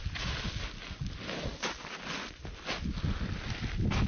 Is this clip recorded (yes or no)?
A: yes